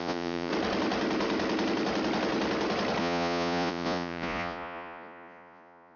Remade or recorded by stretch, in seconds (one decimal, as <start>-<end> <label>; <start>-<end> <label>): 0.0-0.5 remade; 0.5-3.0 recorded; 3.0-6.0 remade